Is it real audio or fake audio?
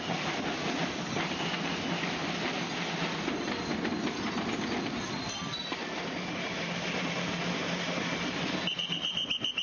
real